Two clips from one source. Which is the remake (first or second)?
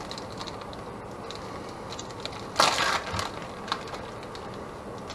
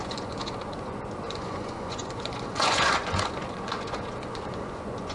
second